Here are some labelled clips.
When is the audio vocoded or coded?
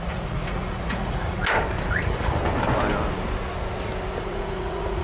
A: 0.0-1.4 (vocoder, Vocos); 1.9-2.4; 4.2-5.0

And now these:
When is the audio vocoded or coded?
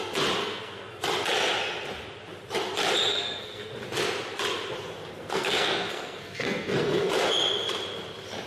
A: 0.4-1.0 (codec, SNAC); 3.1-3.7; 5.1-7.1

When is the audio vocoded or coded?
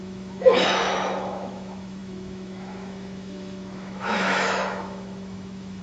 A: 0.0-5.8 (autoencoder, DAC-VAE)